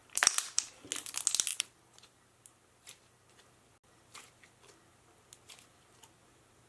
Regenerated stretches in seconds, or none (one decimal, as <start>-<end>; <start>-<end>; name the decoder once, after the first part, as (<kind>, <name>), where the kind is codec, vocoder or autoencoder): 0.0-0.6 (vocoder, BigVGAN v2); 1.5-3.3